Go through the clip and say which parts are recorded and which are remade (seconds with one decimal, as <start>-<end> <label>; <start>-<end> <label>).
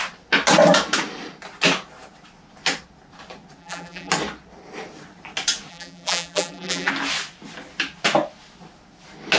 0.0-3.6 recorded; 3.6-4.1 remade; 4.1-5.7 recorded; 5.7-6.9 remade; 6.9-9.4 recorded